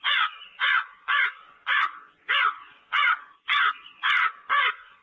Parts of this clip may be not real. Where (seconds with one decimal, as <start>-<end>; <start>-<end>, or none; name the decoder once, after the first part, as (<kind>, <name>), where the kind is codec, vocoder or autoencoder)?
0.0-5.0 (vocoder, Vocos)